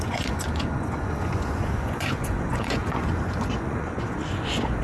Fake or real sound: fake